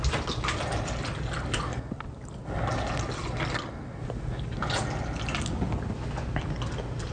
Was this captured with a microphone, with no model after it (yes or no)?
yes